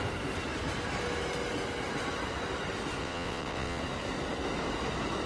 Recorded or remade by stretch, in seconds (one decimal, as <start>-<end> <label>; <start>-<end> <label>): 0.0-3.0 recorded; 3.0-3.8 remade; 3.8-5.3 recorded